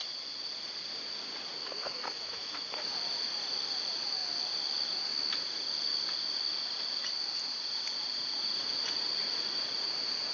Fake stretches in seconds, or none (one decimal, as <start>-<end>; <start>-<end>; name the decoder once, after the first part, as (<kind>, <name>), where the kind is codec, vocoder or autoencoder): 1.6-2.6 (autoencoder, DAC-VAE)